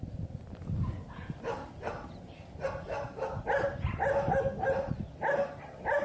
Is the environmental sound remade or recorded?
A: recorded